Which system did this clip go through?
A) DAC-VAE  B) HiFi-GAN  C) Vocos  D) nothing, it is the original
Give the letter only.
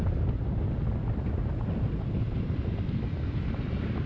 D